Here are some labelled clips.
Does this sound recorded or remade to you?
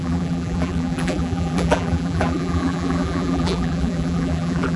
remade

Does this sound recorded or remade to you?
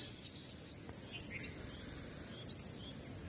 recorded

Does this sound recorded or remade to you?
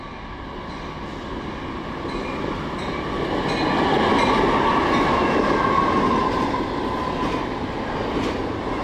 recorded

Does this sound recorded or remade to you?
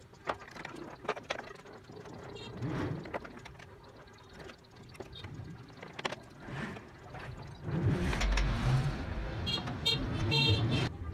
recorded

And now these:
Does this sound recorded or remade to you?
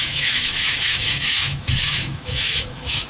remade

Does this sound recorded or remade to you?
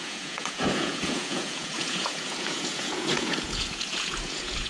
remade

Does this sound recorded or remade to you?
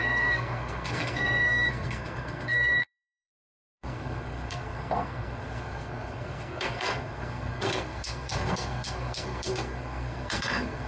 remade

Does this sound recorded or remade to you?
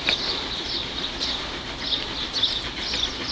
recorded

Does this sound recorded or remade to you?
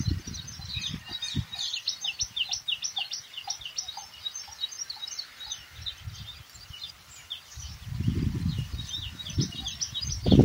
recorded